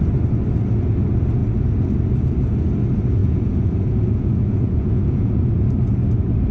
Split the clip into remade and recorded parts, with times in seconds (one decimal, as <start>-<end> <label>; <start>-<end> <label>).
0.0-3.2 recorded; 3.2-5.3 remade; 5.3-6.5 recorded